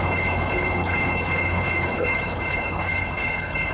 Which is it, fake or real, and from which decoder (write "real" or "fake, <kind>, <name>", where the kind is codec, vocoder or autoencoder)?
fake, codec, HILCodec